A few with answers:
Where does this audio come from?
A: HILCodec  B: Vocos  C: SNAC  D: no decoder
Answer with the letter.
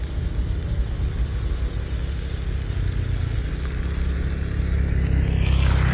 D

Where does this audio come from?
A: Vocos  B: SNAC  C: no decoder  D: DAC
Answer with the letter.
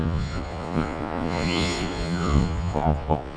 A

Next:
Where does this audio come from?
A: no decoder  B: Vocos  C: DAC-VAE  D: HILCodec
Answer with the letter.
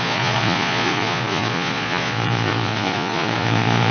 B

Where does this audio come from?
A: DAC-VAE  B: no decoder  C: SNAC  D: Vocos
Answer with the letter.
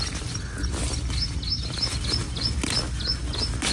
B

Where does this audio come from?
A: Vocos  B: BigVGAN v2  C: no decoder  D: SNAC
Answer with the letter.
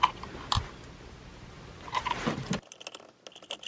C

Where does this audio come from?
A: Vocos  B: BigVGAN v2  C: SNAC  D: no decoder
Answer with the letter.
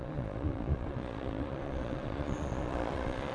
A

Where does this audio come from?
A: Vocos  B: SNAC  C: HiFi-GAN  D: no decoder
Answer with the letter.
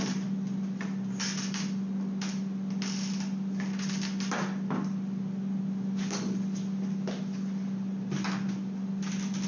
D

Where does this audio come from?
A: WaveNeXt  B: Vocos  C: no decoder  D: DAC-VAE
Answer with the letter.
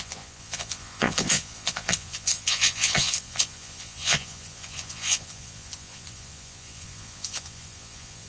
B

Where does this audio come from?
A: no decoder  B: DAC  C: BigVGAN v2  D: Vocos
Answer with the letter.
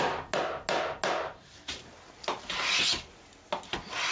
A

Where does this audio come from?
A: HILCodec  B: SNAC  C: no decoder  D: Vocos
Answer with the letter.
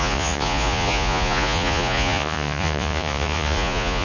D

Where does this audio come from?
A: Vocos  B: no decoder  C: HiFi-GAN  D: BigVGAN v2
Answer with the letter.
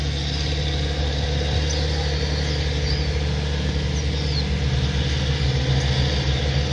B